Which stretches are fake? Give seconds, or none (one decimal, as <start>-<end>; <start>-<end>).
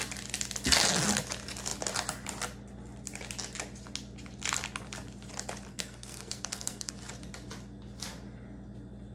5.7-6.9